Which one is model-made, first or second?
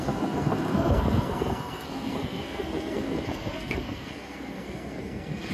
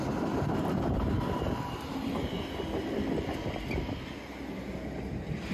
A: first